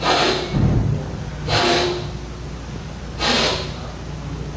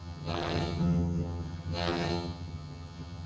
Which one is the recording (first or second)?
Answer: first